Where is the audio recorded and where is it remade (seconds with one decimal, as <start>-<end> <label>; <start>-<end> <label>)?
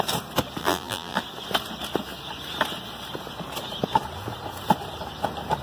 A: 0.0-0.6 recorded; 0.6-1.2 remade; 1.2-5.6 recorded